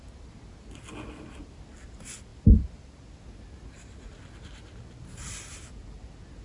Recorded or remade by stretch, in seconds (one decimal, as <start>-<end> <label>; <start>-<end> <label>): 0.0-6.4 recorded